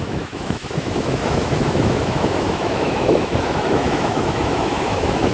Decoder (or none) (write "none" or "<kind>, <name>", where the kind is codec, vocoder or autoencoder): autoencoder, DAC-VAE